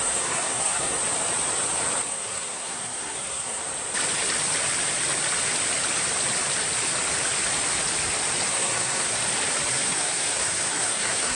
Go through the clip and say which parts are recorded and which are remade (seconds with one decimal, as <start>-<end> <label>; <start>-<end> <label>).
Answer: 0.0-1.0 remade; 1.0-2.1 recorded; 2.1-3.6 remade; 3.6-8.5 recorded; 8.5-9.2 remade; 9.2-9.7 recorded; 9.7-11.3 remade